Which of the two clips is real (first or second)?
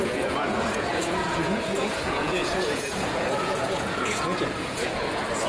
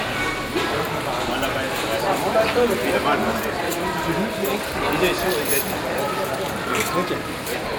second